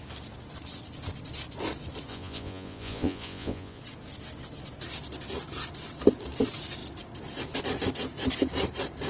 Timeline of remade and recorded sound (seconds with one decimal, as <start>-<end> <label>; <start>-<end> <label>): 0.0-2.1 recorded; 2.1-3.8 remade; 3.8-9.1 recorded